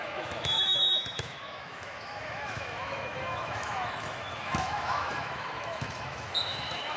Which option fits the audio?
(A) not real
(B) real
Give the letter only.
A